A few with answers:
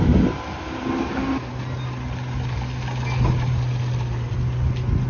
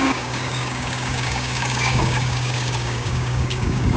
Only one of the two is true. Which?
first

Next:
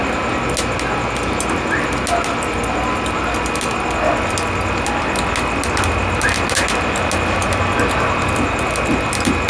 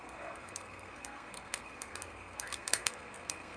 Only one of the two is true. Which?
first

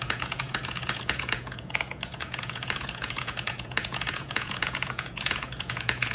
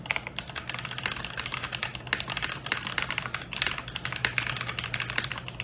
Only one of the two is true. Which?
second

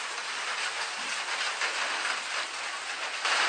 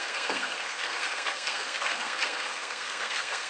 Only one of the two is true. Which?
first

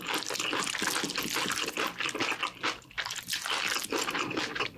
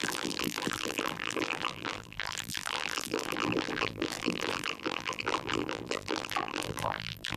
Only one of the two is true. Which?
first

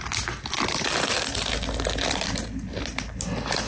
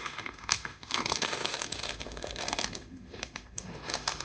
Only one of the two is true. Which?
first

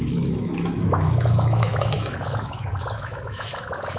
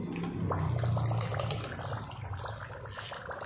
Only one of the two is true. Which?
second